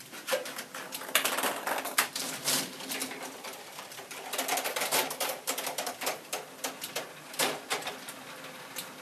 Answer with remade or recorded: remade